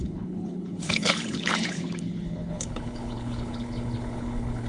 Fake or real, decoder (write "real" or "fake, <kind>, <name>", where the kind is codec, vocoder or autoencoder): fake, codec, HILCodec